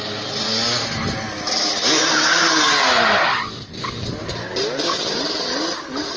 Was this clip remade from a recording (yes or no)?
no